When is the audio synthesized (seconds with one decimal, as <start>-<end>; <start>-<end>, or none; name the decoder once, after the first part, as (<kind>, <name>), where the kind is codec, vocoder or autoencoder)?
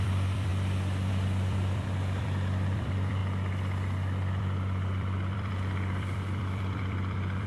0.0-3.2 (vocoder, BigVGAN v2); 4.4-7.5